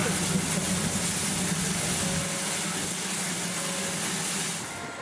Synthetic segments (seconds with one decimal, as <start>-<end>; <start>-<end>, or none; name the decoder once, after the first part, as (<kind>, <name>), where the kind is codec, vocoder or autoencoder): none